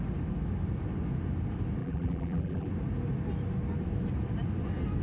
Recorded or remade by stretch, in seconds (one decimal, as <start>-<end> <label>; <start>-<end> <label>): 0.0-1.8 recorded; 1.8-2.7 remade; 2.7-5.0 recorded